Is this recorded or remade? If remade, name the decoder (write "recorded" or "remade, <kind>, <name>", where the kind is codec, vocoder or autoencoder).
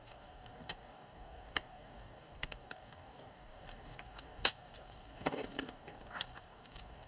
remade, codec, DAC